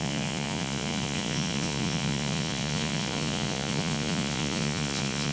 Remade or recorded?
remade